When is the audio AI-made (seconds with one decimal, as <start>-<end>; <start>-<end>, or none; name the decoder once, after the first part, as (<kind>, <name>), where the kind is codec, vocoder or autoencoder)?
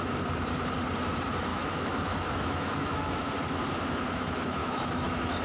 1.5-3.3 (autoencoder, DAC-VAE); 4.6-5.4